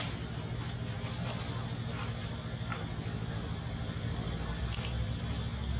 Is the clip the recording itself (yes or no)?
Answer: yes